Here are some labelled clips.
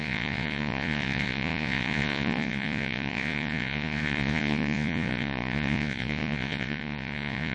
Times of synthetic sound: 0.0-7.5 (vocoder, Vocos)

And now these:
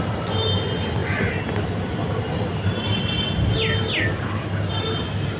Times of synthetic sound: none

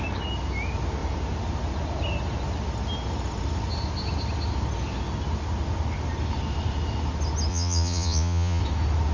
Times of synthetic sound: 7.5-8.6 (vocoder, Vocos)